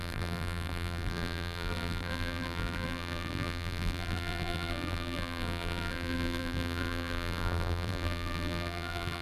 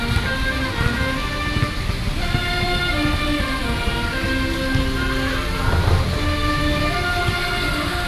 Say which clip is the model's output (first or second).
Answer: first